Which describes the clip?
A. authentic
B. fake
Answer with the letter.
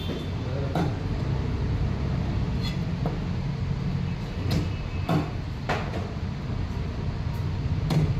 A